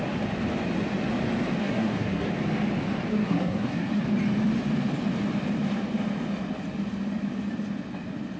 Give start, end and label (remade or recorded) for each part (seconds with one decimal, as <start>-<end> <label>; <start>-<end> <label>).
0.0-1.6 recorded; 1.6-2.3 remade; 2.3-3.1 recorded; 3.1-4.0 remade; 4.0-8.4 recorded